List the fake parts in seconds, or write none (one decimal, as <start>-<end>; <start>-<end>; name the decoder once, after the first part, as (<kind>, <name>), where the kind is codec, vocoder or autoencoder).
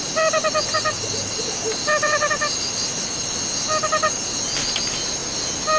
none